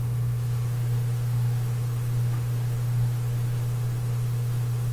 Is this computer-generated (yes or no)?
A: yes